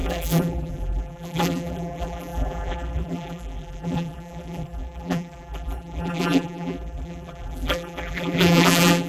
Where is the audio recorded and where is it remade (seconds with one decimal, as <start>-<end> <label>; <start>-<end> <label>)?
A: 0.0-9.1 remade